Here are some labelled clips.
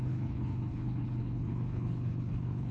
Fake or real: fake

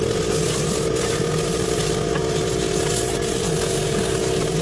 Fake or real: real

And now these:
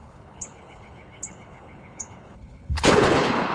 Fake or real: fake